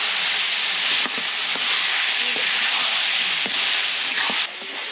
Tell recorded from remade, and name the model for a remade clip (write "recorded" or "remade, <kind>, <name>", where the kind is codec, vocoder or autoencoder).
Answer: recorded